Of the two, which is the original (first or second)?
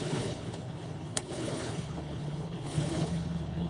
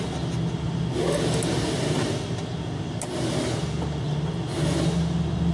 second